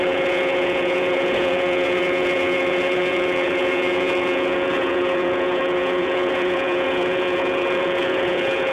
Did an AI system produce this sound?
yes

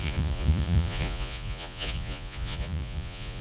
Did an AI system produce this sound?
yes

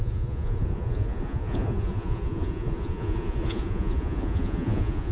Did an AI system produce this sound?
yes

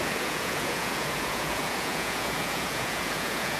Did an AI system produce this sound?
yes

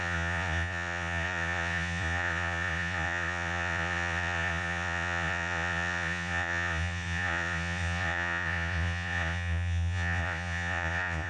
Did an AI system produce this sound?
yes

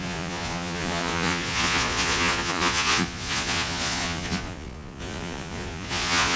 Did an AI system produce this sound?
yes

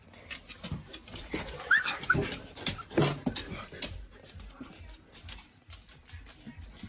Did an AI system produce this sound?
no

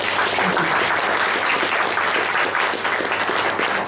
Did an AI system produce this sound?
no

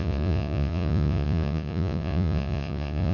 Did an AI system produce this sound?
yes